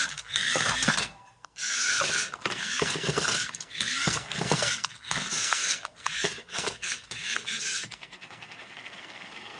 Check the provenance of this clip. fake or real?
fake